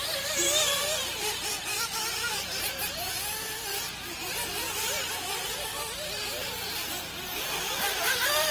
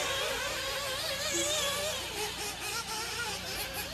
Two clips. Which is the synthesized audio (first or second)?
first